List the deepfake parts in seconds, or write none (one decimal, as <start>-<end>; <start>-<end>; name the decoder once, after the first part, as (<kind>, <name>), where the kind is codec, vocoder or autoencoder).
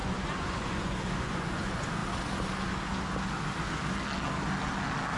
0.0-2.0 (vocoder, Vocos)